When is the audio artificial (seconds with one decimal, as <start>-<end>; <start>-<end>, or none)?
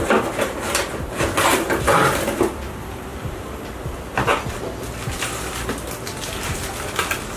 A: none